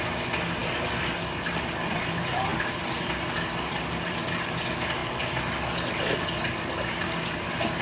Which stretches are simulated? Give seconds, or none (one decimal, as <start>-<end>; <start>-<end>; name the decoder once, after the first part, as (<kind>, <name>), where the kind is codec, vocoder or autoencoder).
none